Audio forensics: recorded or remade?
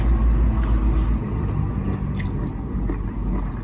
recorded